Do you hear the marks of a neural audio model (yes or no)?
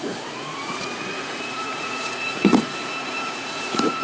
yes